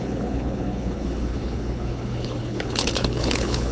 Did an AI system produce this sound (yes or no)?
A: yes